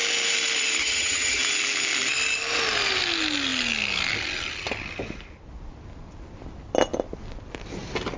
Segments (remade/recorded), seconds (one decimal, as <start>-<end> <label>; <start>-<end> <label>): 0.0-0.8 recorded; 0.8-1.4 remade; 1.4-8.2 recorded